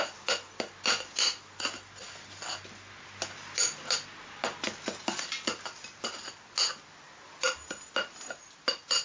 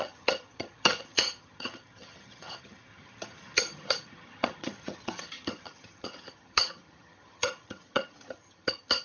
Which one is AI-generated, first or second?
second